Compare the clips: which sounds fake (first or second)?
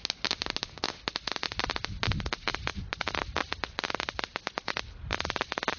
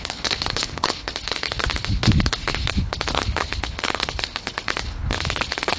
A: second